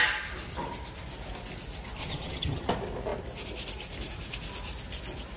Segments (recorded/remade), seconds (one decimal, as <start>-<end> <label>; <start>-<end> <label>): 0.0-2.0 recorded; 2.0-2.7 remade; 2.7-5.4 recorded